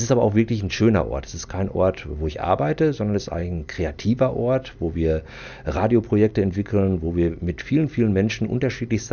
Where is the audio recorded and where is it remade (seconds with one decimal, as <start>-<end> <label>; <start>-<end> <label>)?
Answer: 0.0-9.1 recorded